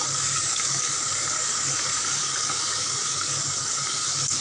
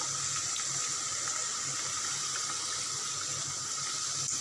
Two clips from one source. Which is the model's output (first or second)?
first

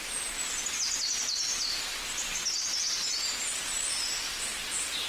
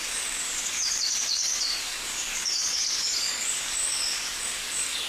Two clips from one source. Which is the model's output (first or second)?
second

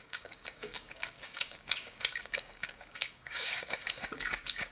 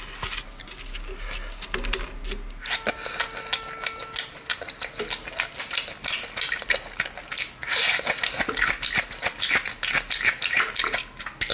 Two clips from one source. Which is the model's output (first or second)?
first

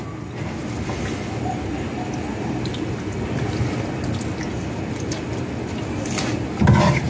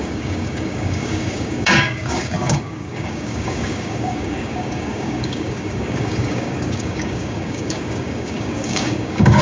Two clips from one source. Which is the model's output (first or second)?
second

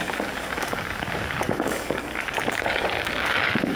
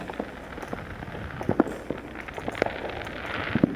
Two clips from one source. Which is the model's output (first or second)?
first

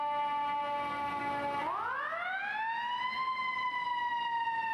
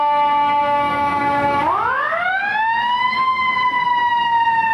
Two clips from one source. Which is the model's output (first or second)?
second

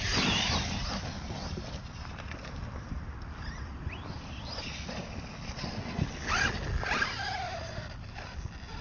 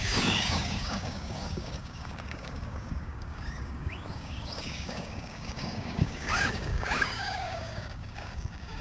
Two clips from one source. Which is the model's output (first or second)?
second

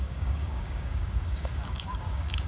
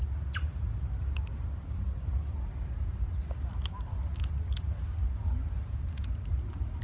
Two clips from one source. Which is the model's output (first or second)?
first